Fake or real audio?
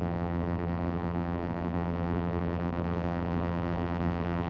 fake